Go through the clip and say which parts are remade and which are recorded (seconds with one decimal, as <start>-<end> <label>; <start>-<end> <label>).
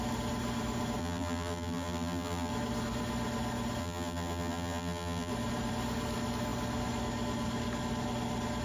0.0-1.0 recorded; 1.0-2.5 remade; 2.5-3.8 recorded; 3.8-5.3 remade; 5.3-8.6 recorded